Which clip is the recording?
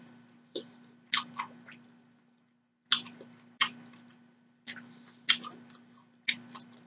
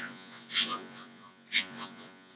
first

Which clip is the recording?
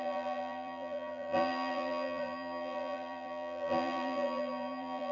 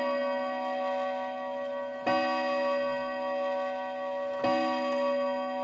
second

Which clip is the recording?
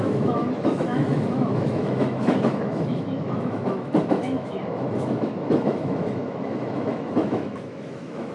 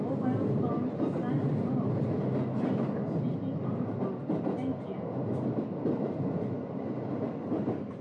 second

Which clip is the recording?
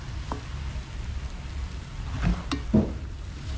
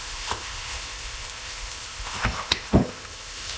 first